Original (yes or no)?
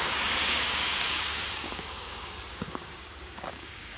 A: no